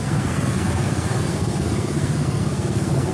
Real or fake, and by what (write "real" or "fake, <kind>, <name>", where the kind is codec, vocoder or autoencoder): fake, codec, SNAC